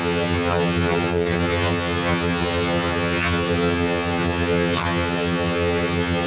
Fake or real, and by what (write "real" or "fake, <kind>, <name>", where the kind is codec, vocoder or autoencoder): fake, vocoder, HiFi-GAN